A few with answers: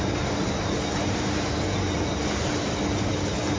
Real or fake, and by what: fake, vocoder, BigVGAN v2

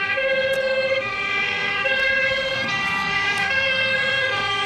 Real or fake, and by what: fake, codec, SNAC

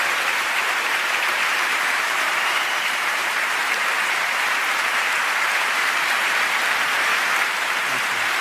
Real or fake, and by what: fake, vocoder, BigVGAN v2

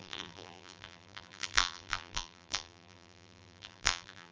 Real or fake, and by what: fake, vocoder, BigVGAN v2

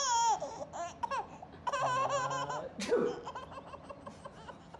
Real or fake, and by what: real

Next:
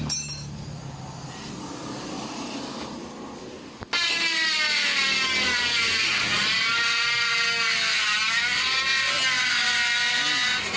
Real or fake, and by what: real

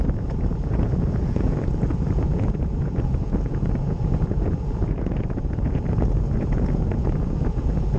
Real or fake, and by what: fake, vocoder, Vocos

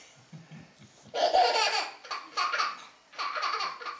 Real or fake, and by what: real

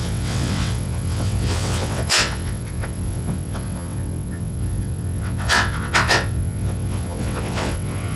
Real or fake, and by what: fake, vocoder, WaveNeXt